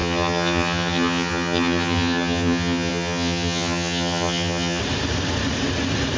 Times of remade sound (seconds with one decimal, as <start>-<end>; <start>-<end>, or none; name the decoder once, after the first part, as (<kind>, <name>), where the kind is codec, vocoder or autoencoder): 0.0-4.8 (vocoder, HiFi-GAN)